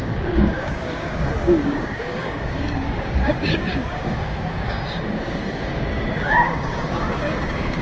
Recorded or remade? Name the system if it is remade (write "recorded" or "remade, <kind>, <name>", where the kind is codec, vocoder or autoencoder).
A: remade, codec, DAC